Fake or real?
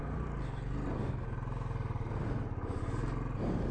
real